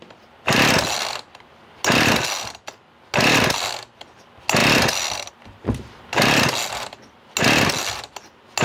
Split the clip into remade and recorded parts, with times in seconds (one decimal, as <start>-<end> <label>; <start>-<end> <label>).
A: 0.0-4.6 recorded; 4.6-5.3 remade; 5.3-8.6 recorded